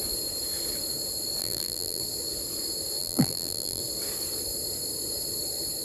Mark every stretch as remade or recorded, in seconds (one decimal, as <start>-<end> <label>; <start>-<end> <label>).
0.0-1.4 recorded; 1.4-2.0 remade; 2.0-3.0 recorded; 3.0-3.8 remade; 3.8-5.8 recorded